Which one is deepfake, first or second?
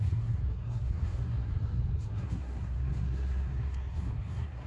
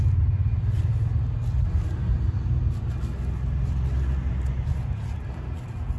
first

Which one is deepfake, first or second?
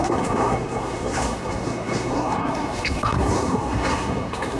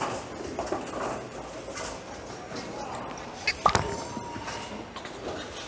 first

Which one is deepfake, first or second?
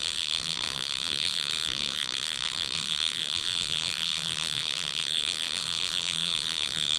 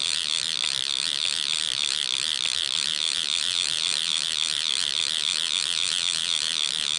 first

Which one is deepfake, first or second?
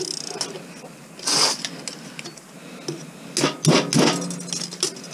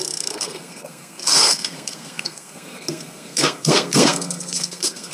second